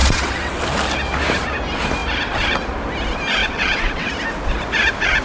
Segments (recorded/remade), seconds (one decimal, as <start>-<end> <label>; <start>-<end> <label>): 0.0-0.6 remade; 0.6-3.4 recorded; 3.4-4.1 remade; 4.1-5.2 recorded